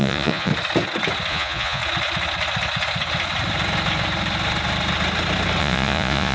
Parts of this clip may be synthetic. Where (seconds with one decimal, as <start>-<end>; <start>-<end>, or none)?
0.0-0.5; 1.3-1.8; 5.6-6.3